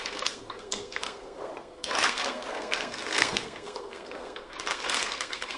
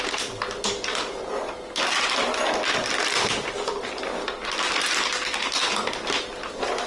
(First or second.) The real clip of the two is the second